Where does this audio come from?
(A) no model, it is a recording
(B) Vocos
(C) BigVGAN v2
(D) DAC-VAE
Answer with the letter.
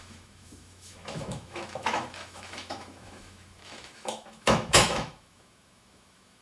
D